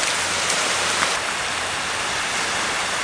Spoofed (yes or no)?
no